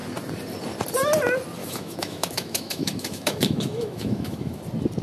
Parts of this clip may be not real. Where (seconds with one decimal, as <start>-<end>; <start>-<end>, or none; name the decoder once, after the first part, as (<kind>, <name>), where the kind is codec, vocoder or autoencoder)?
1.6-4.6 (autoencoder, DAC-VAE)